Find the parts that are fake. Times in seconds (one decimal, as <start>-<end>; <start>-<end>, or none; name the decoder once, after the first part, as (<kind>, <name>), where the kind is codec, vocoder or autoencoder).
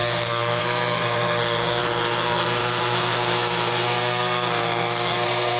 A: 0.0-5.6 (codec, SNAC)